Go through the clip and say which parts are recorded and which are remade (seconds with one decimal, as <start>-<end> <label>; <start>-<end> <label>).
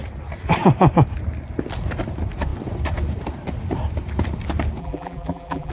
0.0-4.8 recorded; 4.8-5.7 remade